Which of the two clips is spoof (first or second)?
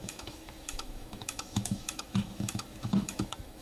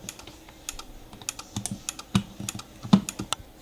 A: first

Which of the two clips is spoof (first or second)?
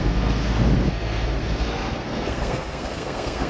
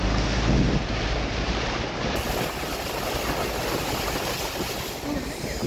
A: first